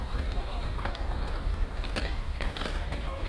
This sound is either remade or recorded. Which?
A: remade